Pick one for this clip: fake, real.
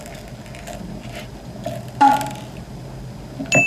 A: real